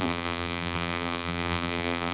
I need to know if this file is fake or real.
fake